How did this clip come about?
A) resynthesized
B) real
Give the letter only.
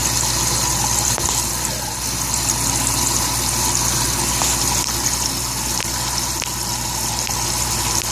B